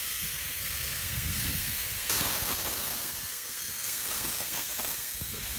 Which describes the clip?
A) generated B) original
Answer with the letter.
A